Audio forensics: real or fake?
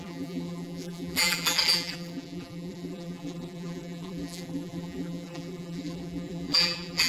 fake